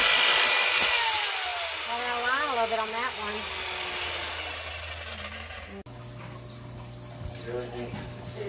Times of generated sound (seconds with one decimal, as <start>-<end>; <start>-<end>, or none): none